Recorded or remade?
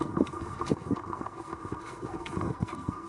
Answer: remade